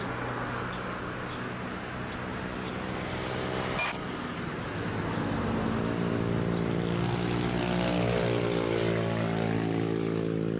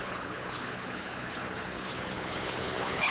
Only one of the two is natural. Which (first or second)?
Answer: first